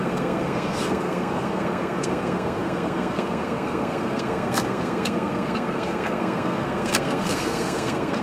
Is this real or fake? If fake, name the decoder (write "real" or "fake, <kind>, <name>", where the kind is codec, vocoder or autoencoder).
fake, codec, SNAC